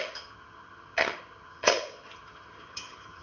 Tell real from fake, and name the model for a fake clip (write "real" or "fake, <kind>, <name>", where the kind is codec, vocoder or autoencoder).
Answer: fake, vocoder, HiFi-GAN